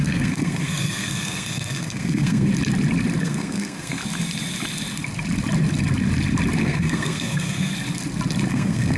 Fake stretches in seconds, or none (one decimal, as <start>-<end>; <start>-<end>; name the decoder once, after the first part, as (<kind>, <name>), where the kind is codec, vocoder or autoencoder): 0.0-2.5 (codec, SNAC); 3.2-4.0; 6.6-7.7; 8.5-9.0